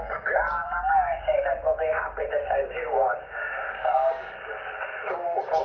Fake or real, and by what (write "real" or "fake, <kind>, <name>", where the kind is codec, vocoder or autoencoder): fake, codec, DAC